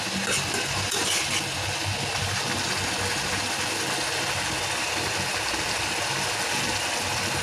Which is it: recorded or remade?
recorded